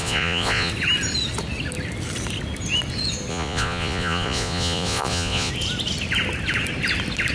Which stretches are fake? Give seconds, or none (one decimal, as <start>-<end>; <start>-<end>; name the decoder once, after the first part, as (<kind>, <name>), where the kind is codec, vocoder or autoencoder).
0.0-0.7 (vocoder, Vocos); 3.3-5.5